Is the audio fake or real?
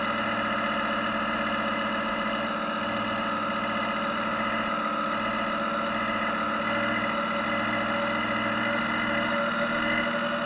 real